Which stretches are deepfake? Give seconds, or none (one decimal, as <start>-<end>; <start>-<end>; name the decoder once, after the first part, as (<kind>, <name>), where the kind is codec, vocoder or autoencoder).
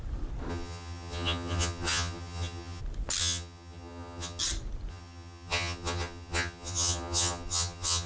0.5-2.8 (vocoder, HiFi-GAN); 3.2-4.4; 4.9-8.1